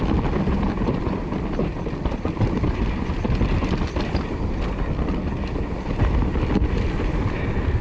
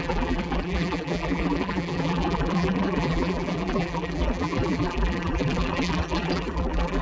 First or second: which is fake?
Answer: second